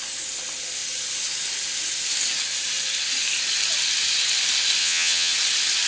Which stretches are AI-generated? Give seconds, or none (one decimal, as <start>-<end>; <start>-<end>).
4.8-5.3